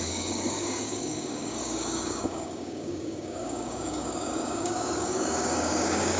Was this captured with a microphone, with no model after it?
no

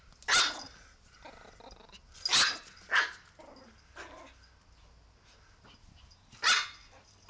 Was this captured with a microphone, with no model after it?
yes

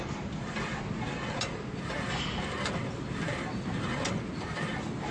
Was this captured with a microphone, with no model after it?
yes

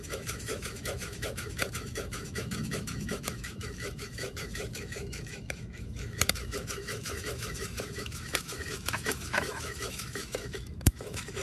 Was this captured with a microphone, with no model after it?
no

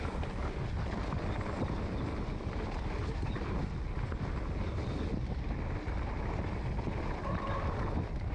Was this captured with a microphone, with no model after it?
yes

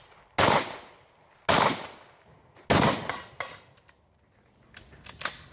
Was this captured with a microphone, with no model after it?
yes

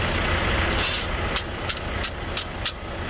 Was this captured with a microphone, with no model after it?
yes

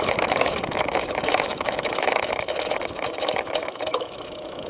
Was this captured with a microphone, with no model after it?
no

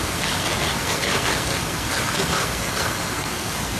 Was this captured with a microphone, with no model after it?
no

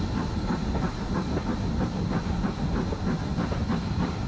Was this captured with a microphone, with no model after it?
yes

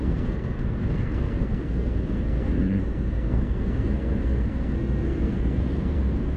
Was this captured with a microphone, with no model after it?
no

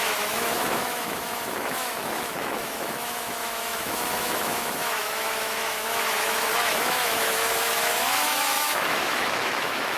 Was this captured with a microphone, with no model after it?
no